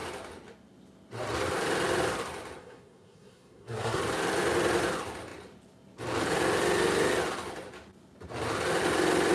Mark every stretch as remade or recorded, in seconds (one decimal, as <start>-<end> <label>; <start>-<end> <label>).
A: 0.0-2.6 recorded; 2.6-4.0 remade; 4.0-9.3 recorded